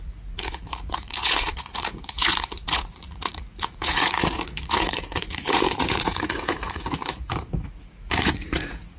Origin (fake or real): fake